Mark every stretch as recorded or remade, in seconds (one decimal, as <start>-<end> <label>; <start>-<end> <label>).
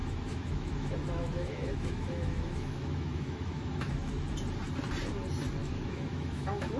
0.0-3.9 remade; 3.9-5.6 recorded; 5.6-6.8 remade